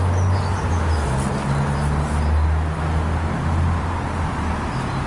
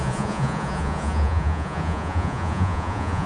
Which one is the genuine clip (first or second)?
first